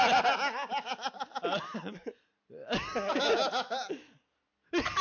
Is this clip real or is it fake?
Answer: real